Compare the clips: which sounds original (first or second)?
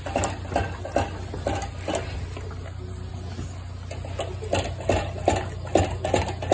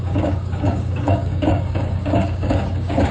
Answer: first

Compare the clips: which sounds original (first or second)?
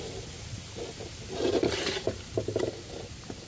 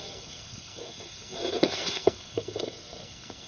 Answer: first